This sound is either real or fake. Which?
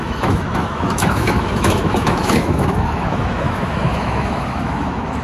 fake